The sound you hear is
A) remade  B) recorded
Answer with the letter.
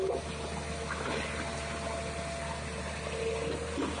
B